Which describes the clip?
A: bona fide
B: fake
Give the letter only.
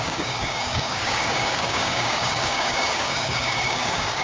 B